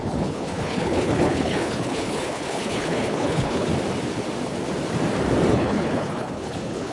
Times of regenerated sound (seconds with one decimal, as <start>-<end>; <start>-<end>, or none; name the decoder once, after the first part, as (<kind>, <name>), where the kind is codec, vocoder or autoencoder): 0.0-3.7 (codec, HILCodec); 5.5-6.9